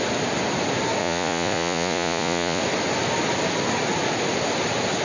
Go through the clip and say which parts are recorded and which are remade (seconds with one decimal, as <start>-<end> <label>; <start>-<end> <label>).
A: 0.0-1.0 recorded; 1.0-2.6 remade; 2.6-5.0 recorded